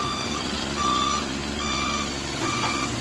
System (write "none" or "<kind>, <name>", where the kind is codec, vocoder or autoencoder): vocoder, Vocos